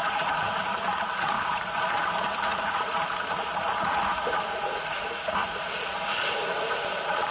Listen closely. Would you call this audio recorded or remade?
remade